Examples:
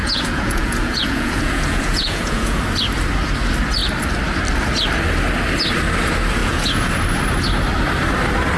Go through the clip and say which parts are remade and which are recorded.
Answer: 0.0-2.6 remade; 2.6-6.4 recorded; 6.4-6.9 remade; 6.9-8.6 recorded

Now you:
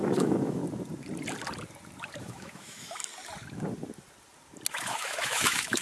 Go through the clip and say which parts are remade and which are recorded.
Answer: 0.0-0.6 remade; 0.6-2.2 recorded; 2.2-3.0 remade; 3.0-4.7 recorded; 4.7-5.8 remade